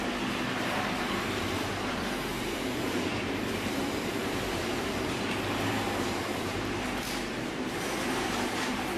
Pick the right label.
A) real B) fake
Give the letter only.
B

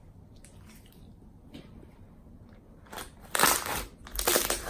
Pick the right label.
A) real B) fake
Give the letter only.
B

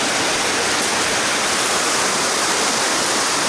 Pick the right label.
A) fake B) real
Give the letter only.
B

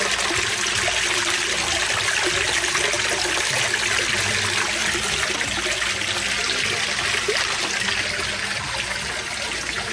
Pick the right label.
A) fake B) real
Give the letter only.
B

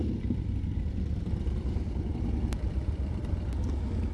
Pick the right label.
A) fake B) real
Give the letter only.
A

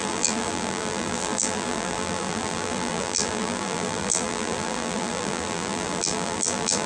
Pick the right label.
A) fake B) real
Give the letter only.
A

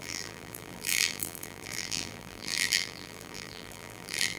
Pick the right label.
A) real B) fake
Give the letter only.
B